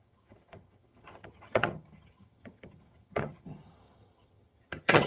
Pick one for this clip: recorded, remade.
remade